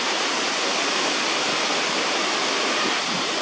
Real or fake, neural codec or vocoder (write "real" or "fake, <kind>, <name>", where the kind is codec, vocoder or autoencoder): real